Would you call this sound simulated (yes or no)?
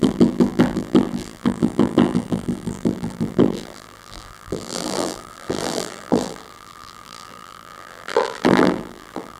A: yes